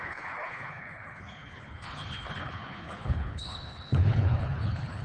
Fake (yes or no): yes